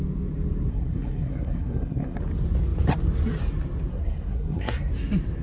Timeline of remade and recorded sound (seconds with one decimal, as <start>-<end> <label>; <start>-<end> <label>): 0.0-0.7 recorded; 0.7-2.2 remade; 2.2-3.9 recorded; 3.9-4.9 remade; 4.9-5.4 recorded